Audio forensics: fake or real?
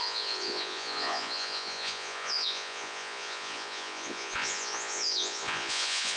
fake